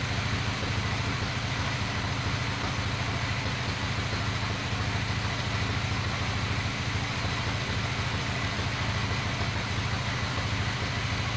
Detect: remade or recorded recorded